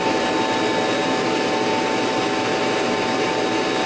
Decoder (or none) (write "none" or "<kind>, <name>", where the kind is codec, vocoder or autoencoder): none